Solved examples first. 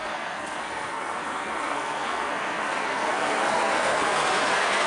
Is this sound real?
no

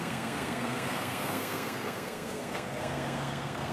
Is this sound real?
no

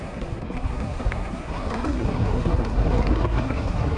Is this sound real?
no